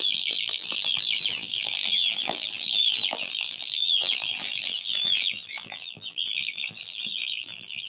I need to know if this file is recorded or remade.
remade